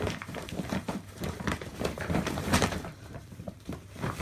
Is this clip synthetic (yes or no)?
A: yes